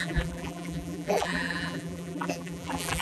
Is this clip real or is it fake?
fake